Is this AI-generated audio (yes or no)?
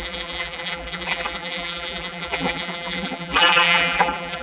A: yes